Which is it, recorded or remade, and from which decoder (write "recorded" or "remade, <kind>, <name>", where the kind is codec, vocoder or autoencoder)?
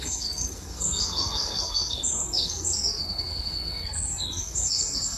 remade, codec, SNAC